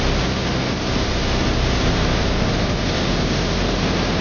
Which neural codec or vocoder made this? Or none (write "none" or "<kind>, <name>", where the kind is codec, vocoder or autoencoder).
vocoder, BigVGAN v2